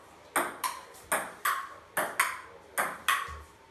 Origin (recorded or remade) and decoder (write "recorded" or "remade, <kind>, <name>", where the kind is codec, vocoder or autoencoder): recorded